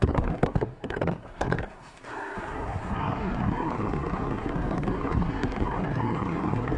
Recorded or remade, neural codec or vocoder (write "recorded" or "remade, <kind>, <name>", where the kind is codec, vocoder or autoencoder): remade, codec, SNAC